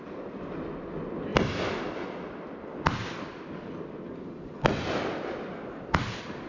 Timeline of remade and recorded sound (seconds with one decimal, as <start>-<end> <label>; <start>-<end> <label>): 0.0-6.5 recorded